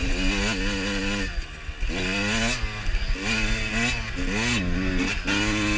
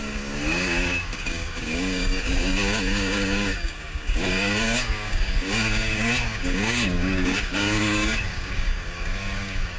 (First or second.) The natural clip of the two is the first